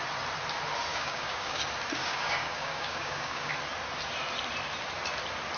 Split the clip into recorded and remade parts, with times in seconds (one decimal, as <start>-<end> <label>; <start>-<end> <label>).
0.0-0.9 recorded; 0.9-1.6 remade; 1.6-2.0 recorded; 2.0-3.5 remade; 3.5-5.6 recorded